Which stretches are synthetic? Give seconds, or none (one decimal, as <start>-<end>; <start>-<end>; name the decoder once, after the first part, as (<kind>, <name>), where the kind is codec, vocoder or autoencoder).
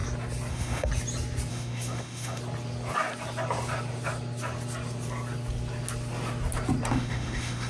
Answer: 0.5-0.9 (autoencoder, DAC-VAE); 1.5-2.4; 6.9-7.7